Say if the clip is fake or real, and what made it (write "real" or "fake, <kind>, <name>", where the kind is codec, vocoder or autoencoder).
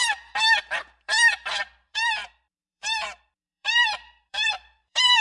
fake, vocoder, BigVGAN v2